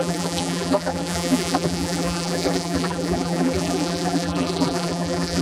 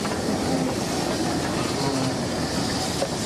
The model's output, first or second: first